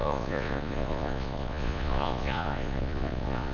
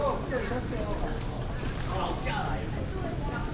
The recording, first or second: second